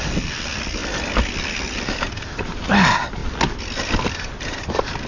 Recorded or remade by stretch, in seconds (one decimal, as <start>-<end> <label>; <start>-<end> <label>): 0.0-0.8 remade; 0.8-1.4 recorded; 1.4-3.2 remade; 3.2-4.1 recorded; 4.1-5.1 remade